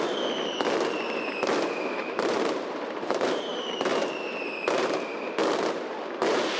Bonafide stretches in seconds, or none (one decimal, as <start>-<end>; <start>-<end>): 0.0-2.0; 3.5-6.6